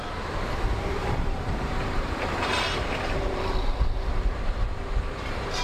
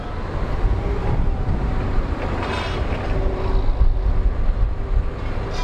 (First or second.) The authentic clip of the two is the second